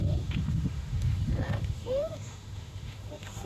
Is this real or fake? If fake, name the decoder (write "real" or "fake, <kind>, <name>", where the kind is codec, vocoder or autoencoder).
fake, autoencoder, DAC-VAE